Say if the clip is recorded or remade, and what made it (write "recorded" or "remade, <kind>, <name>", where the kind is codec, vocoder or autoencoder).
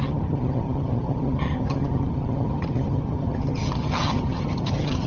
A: remade, vocoder, HiFi-GAN